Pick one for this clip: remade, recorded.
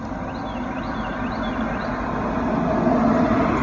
recorded